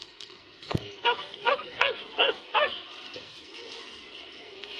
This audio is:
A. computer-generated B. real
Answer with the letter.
A